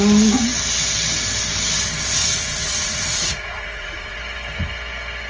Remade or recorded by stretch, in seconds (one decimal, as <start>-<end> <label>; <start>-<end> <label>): 0.0-2.2 recorded; 2.2-4.2 remade; 4.2-5.3 recorded